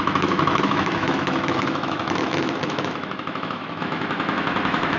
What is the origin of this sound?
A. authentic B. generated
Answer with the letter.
B